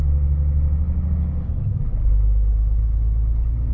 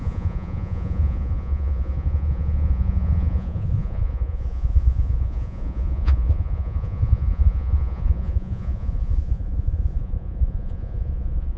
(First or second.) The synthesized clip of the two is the second